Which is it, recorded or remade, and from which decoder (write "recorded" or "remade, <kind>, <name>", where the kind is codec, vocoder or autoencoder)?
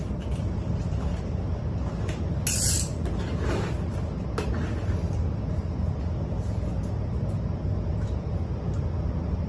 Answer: recorded